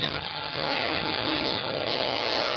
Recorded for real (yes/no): no